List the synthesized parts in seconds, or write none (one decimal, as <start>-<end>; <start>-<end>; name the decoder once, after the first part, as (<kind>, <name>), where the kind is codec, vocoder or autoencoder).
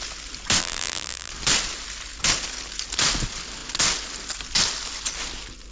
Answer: 0.6-1.3 (vocoder, BigVGAN v2)